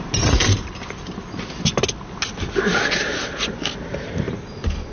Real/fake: real